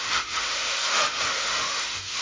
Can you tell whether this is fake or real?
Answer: fake